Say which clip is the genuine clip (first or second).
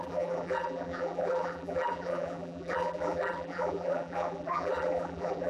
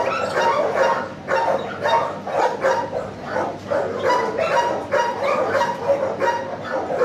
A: second